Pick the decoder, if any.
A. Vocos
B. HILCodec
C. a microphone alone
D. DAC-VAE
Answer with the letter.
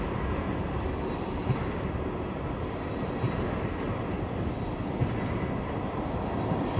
C